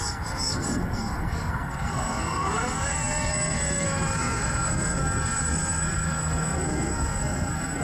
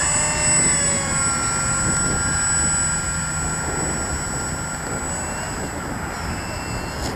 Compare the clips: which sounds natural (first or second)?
second